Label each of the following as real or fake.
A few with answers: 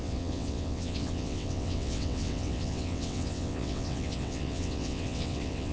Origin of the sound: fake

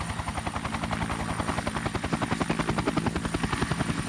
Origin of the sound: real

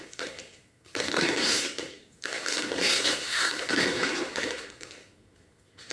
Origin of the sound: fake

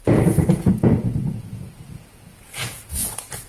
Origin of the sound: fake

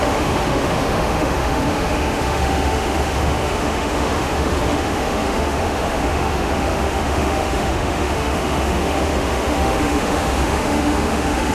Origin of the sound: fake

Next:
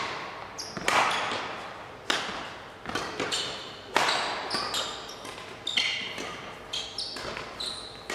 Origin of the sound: real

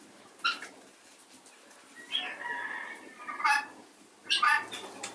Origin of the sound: real